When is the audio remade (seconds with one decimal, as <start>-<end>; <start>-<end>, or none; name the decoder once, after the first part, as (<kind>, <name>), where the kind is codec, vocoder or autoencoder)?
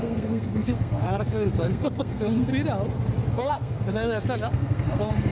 0.0-2.5 (codec, SNAC); 3.3-5.3